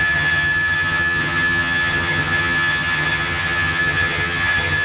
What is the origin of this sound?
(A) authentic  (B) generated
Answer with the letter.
B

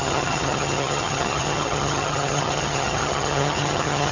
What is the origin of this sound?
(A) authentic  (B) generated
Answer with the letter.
B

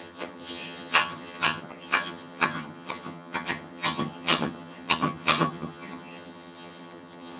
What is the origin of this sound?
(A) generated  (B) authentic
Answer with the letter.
A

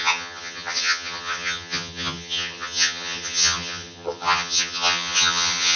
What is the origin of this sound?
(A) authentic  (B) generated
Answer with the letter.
B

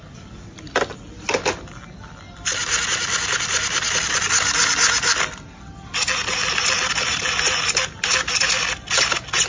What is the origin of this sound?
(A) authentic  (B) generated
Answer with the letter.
A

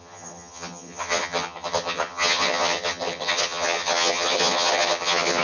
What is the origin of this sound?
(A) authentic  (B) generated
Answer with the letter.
B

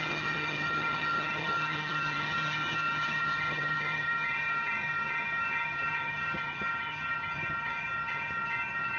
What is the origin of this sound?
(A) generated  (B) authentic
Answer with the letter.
A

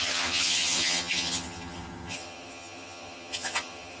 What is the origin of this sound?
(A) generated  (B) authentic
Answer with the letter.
A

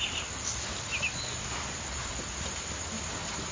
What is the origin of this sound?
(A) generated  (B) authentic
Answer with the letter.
B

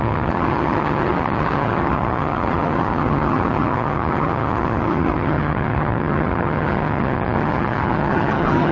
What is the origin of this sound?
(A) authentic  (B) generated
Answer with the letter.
B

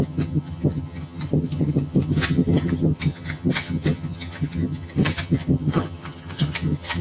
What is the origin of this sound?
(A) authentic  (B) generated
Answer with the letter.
B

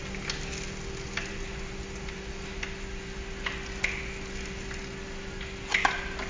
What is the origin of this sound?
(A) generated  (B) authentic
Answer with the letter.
B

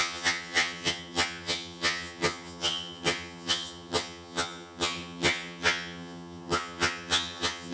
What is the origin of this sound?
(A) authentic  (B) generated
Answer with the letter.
B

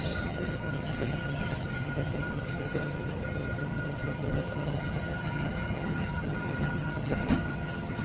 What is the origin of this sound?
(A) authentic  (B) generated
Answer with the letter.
B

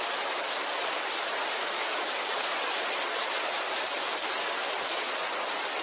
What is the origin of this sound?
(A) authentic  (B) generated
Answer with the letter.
A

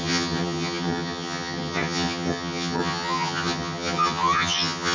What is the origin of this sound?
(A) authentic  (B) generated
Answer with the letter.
B